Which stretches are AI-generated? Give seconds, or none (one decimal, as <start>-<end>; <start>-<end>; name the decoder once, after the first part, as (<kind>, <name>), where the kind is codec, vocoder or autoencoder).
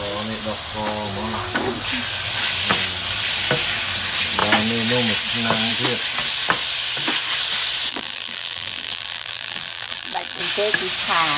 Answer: 7.9-10.4 (vocoder, BigVGAN v2)